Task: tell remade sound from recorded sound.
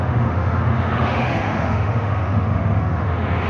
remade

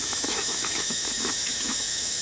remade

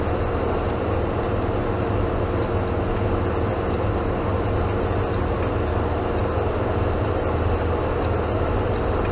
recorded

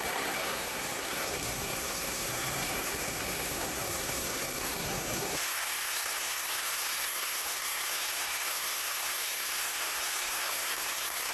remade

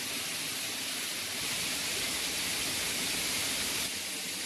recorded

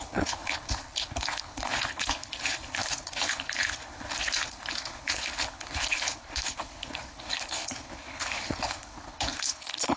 remade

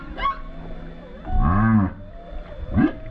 recorded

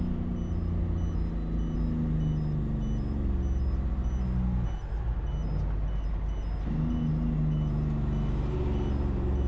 recorded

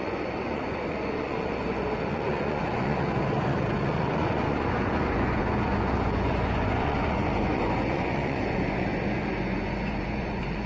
remade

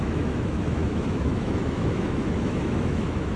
remade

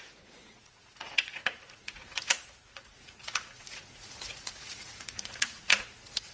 remade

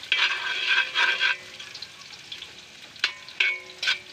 recorded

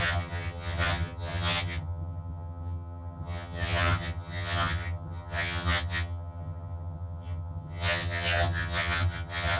remade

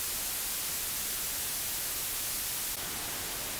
recorded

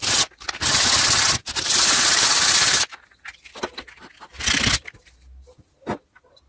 recorded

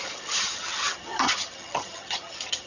remade